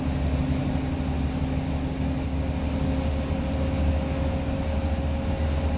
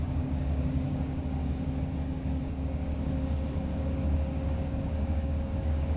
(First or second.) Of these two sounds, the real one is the first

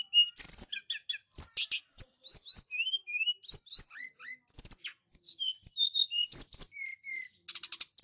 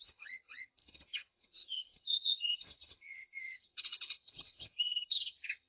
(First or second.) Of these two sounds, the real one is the first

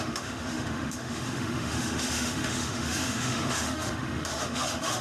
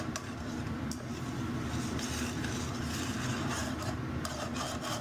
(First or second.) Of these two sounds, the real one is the second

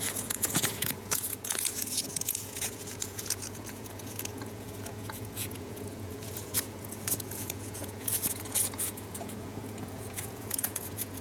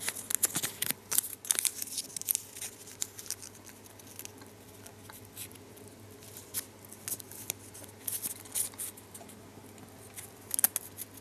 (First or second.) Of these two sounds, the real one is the second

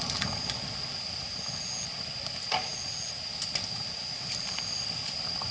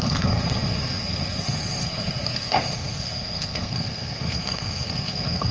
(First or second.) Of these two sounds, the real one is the first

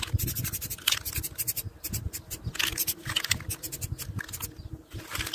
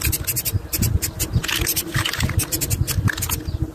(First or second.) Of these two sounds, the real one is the first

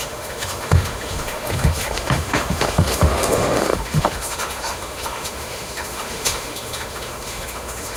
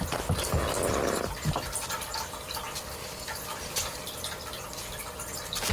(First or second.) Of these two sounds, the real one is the second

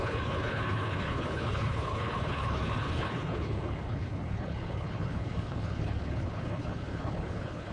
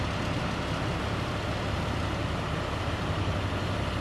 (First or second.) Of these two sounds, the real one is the second